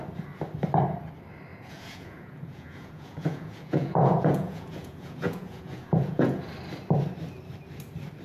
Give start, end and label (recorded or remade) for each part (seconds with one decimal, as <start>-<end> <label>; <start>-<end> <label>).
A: 0.0-1.5 recorded; 1.5-6.4 remade; 6.4-8.2 recorded